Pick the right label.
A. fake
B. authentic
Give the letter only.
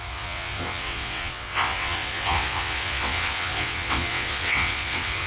A